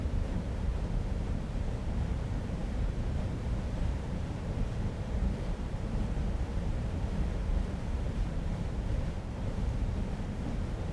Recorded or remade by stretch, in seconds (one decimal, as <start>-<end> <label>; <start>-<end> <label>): 0.0-0.7 remade; 0.7-1.6 recorded; 1.6-10.9 remade